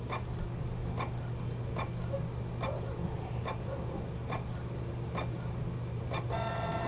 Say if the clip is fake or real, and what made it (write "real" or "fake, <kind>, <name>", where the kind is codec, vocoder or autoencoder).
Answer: real